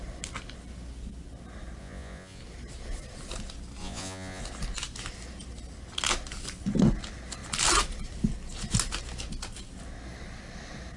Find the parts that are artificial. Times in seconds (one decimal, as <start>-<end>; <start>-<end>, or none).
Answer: 1.8-2.4; 3.8-4.4